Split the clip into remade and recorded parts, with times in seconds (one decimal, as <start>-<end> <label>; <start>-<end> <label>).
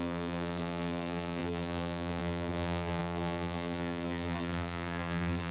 0.0-5.5 remade